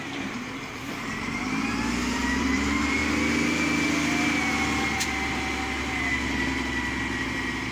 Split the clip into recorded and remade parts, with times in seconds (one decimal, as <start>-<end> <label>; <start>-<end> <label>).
0.0-3.0 remade; 3.0-7.2 recorded; 7.2-7.7 remade